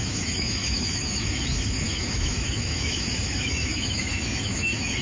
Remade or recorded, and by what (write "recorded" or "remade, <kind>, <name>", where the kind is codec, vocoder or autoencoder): remade, autoencoder, DAC-VAE